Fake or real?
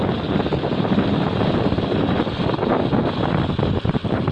real